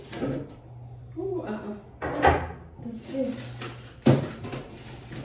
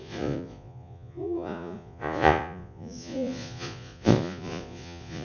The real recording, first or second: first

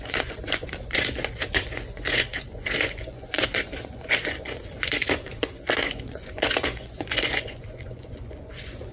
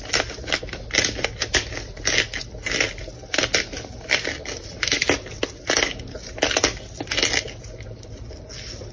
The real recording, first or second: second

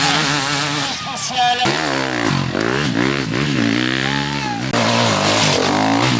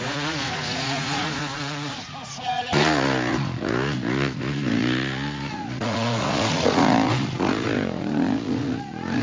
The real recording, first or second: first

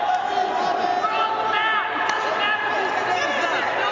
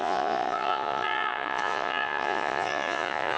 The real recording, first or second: first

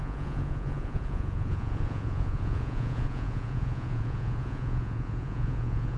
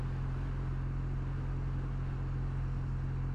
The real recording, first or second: second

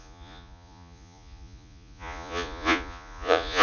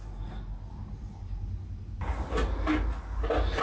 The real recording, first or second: second